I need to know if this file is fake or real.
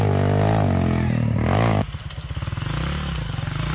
real